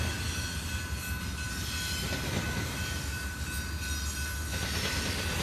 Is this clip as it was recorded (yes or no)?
yes